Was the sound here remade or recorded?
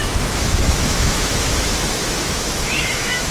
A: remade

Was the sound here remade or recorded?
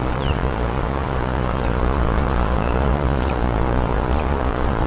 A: remade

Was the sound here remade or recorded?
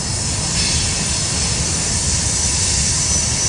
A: recorded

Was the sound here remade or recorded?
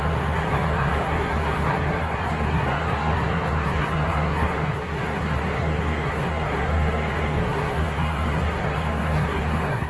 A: remade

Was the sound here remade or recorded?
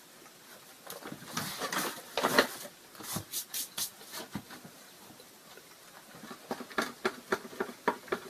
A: recorded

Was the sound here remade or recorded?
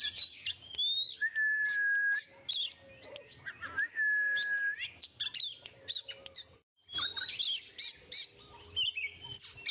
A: recorded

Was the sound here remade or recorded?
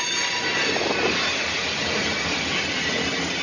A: recorded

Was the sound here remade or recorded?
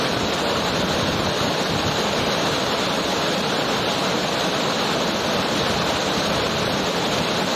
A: recorded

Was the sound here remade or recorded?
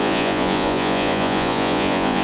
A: remade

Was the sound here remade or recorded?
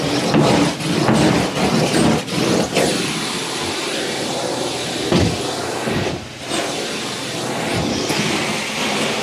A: recorded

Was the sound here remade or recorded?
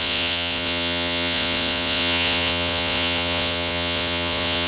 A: remade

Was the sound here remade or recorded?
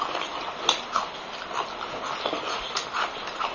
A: recorded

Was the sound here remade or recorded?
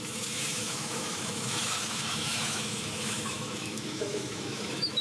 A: remade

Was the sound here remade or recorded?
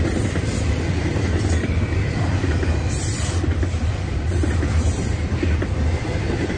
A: remade